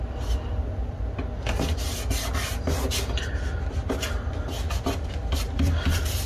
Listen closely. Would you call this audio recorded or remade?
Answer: recorded